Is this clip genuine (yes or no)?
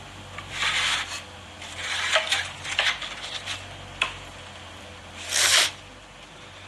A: yes